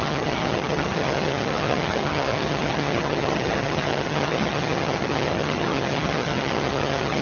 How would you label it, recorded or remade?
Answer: remade